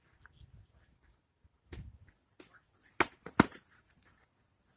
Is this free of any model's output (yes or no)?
yes